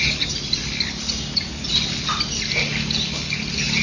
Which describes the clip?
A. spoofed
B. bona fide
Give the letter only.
B